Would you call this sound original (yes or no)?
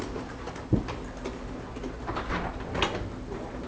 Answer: yes